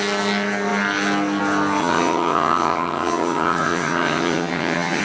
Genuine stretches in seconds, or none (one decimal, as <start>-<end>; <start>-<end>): 0.0-1.8